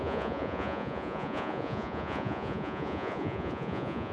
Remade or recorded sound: remade